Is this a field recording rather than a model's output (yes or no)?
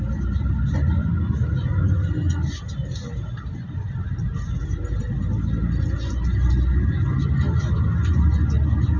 yes